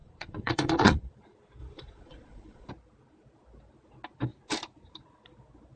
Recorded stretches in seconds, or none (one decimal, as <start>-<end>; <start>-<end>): 1.1-1.6; 2.7-5.8